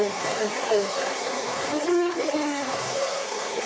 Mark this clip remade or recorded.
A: remade